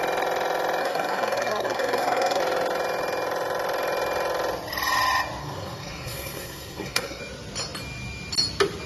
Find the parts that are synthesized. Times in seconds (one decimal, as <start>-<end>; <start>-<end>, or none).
0.8-2.4; 5.4-7.2